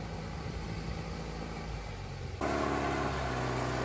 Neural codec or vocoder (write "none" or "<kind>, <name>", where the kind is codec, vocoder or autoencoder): none